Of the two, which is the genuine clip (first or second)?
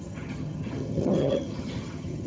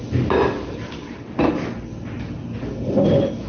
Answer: second